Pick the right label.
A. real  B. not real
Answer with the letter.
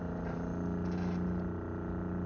A